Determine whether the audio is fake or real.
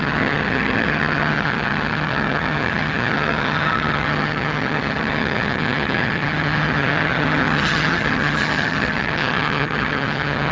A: fake